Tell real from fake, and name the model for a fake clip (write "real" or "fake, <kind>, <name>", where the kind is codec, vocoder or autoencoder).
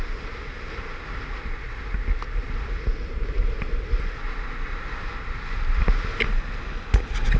real